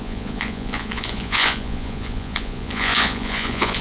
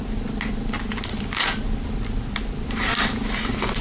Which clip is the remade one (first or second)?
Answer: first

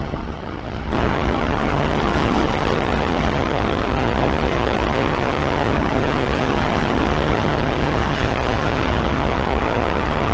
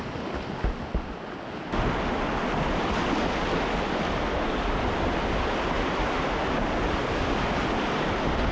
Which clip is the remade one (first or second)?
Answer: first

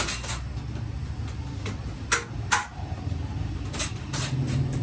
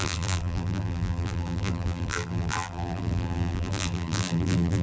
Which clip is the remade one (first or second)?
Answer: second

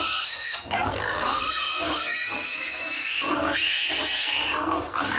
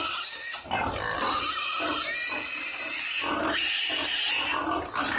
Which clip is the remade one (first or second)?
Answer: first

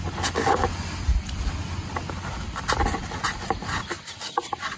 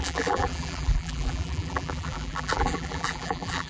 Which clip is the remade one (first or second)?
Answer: second